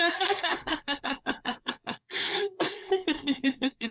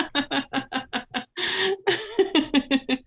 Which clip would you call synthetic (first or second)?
first